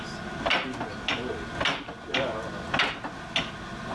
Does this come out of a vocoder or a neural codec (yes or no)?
no